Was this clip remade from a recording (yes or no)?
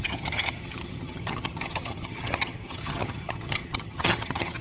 yes